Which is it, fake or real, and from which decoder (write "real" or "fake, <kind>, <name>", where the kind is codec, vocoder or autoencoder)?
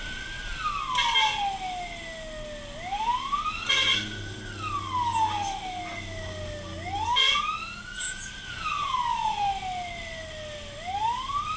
real